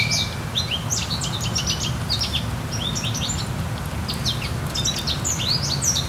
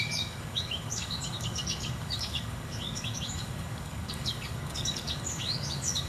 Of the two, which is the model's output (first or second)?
second